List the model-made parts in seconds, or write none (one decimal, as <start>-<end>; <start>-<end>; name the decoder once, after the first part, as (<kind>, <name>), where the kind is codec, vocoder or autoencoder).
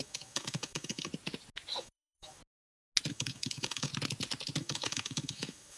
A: 0.0-1.1 (autoencoder, DAC-VAE); 1.8-2.4; 3.1-3.9; 4.6-5.8